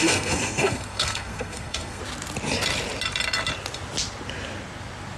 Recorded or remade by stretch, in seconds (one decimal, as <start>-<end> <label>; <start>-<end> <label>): 0.0-2.0 remade; 2.0-5.2 recorded